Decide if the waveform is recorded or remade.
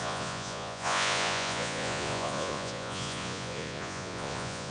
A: remade